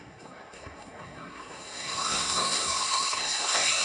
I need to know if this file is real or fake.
fake